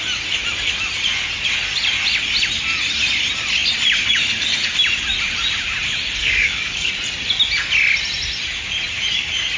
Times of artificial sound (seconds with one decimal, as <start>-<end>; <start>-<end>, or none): 6.2-6.9